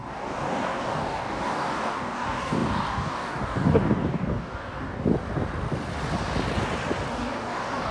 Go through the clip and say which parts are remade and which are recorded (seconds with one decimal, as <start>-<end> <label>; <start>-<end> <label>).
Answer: 0.0-5.1 remade; 5.1-7.1 recorded; 7.1-7.9 remade